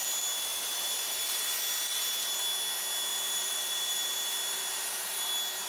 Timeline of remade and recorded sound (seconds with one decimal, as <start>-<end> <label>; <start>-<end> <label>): 0.0-0.5 recorded; 0.5-1.5 remade; 1.5-3.1 recorded; 3.1-5.3 remade; 5.3-5.7 recorded